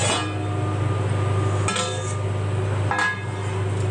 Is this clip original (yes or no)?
yes